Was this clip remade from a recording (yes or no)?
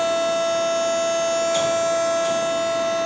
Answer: no